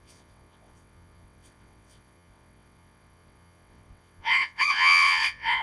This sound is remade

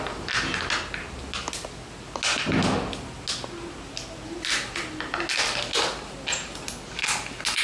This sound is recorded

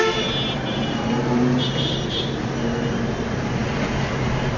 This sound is recorded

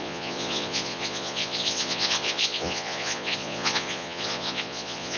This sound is remade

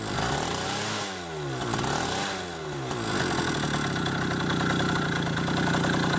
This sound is recorded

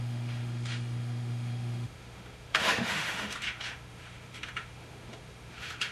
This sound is remade